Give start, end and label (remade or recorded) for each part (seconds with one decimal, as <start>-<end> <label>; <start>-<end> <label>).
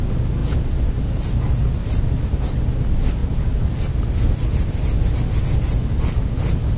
0.0-3.2 recorded; 3.2-3.9 remade; 3.9-6.8 recorded